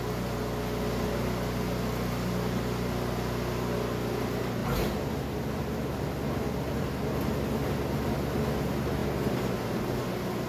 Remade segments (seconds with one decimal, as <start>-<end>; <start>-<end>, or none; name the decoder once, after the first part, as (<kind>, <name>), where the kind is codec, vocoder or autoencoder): 4.6-5.4 (vocoder, BigVGAN v2)